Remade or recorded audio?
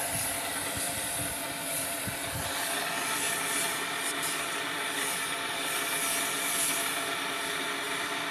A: recorded